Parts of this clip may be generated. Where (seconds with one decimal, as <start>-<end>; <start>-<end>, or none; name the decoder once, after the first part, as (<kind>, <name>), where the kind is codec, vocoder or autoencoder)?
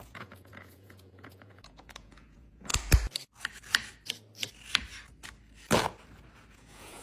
0.0-2.7 (vocoder, Vocos); 6.5-7.0